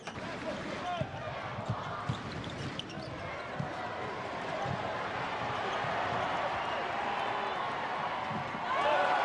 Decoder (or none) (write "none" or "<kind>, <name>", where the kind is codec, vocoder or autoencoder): none